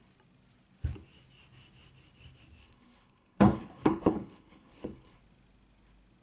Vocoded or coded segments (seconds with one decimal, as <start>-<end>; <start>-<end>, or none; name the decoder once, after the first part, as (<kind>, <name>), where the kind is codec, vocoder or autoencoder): 2.6-5.2 (codec, HILCodec)